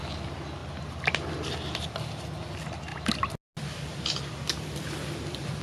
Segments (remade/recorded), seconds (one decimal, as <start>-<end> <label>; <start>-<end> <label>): 0.0-5.6 recorded